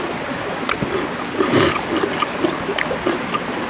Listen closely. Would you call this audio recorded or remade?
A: recorded